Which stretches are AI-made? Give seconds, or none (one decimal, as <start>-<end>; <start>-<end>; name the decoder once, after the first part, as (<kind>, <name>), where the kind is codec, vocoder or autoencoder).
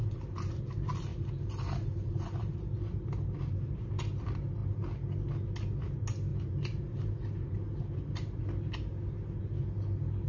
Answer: 0.0-0.6 (vocoder, BigVGAN v2); 1.1-4.0; 6.3-8.4